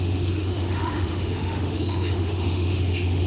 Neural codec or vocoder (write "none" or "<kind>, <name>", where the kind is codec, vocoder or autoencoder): autoencoder, DAC-VAE